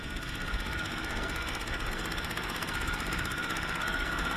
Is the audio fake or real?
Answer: fake